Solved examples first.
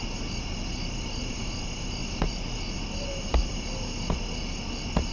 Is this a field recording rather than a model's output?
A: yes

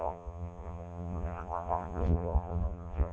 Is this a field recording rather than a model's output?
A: no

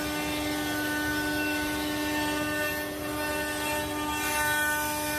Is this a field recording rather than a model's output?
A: yes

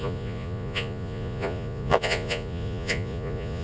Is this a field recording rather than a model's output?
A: no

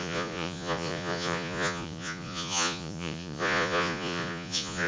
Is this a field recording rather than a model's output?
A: no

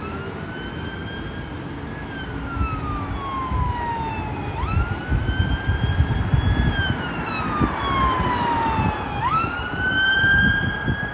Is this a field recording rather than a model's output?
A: yes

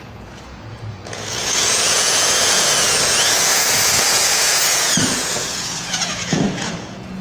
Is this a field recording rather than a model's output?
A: no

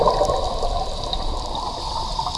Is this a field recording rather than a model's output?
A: yes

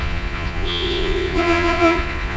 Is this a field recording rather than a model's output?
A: no